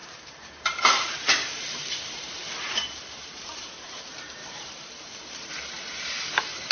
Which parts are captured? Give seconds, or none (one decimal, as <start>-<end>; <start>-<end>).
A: 4.0-4.4; 5.6-6.7

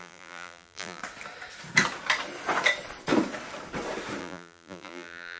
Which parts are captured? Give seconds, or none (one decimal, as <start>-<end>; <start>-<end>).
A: 1.0-4.2

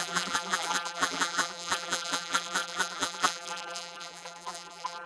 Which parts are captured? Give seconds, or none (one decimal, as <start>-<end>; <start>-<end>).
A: none